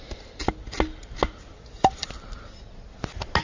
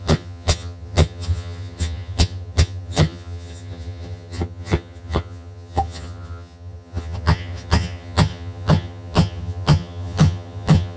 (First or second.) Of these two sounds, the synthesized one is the second